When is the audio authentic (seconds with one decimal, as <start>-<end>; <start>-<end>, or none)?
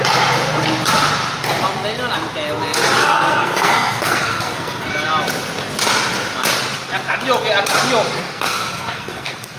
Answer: 0.0-3.0; 4.9-8.2